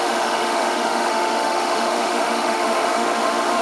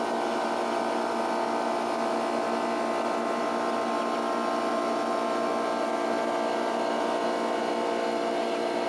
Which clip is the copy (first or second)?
first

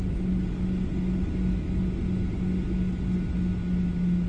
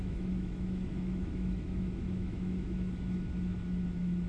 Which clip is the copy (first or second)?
second